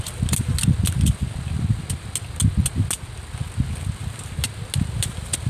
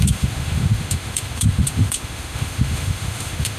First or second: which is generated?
second